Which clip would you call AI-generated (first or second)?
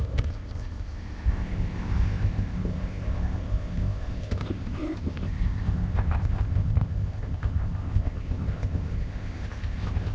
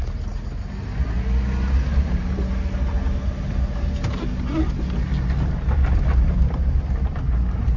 first